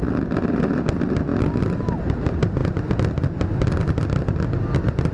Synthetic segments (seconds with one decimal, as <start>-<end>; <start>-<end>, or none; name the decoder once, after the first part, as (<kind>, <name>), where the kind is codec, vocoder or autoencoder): none